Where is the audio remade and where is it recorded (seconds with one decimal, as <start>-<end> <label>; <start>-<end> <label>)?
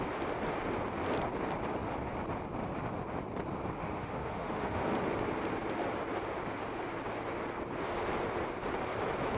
0.0-3.8 recorded; 3.8-4.8 remade; 4.8-9.4 recorded